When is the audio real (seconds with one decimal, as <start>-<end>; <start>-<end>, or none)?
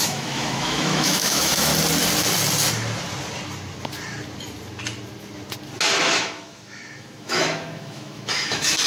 1.7-6.0